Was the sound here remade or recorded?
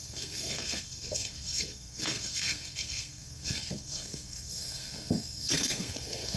remade